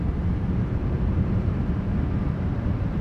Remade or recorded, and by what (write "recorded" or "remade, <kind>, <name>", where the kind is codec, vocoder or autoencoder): remade, vocoder, BigVGAN v2